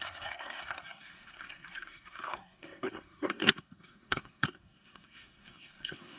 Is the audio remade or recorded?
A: remade